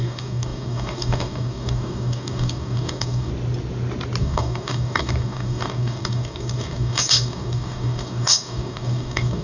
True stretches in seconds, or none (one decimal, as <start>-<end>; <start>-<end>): 3.3-4.2